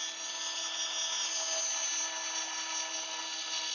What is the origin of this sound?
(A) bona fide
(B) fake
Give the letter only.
A